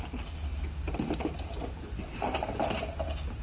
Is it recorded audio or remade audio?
recorded